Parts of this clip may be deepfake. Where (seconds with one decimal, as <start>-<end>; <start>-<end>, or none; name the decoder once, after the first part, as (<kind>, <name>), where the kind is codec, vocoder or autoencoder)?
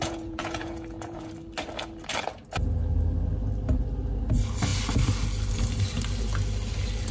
0.0-1.3 (vocoder, Vocos)